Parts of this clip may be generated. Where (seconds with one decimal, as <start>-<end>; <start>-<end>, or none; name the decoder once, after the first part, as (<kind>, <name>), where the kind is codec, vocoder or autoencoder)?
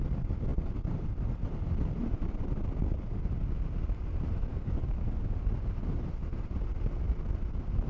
4.5-5.1 (codec, DAC)